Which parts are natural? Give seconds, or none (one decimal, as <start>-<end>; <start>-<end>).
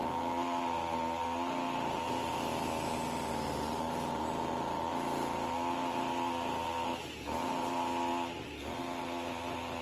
0.0-9.8